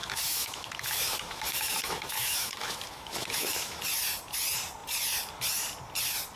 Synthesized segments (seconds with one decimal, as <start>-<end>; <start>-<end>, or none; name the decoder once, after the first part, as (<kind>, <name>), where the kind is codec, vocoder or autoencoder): 0.0-3.8 (autoencoder, DAC-VAE)